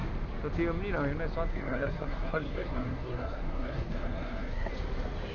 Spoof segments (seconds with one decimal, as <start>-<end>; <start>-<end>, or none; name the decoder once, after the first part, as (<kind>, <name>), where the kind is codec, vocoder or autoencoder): 1.5-4.7 (codec, SNAC)